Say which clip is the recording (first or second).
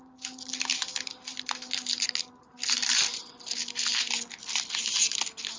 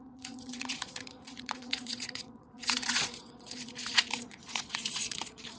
first